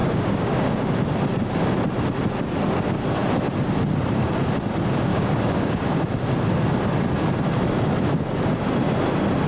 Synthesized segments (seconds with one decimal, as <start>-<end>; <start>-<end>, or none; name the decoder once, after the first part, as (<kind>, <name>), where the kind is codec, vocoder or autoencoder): 0.0-0.9 (codec, DAC); 5.1-6.1